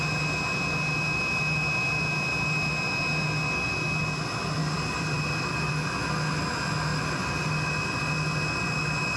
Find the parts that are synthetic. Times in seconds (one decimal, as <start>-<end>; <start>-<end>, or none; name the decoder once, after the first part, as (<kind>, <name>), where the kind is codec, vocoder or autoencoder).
4.6-5.7 (vocoder, BigVGAN v2); 6.9-7.5